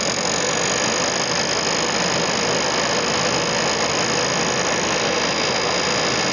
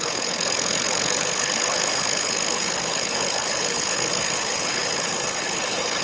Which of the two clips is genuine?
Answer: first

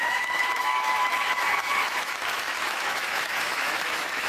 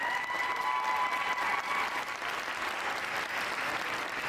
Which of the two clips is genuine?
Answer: second